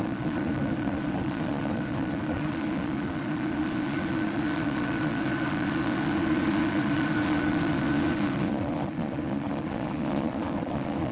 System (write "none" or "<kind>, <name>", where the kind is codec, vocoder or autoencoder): vocoder, Vocos